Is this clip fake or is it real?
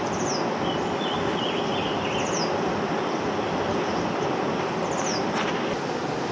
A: real